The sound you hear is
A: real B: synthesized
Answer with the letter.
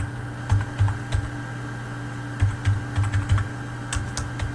A